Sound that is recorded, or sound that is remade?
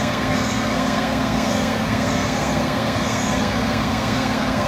remade